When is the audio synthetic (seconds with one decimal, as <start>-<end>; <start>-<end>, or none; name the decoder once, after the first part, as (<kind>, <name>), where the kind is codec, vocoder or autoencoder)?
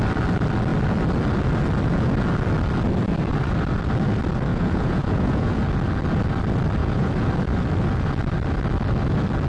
4.5-5.6 (vocoder, Vocos); 6.8-7.3